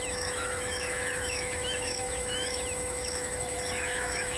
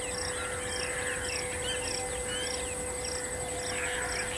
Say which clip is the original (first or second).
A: second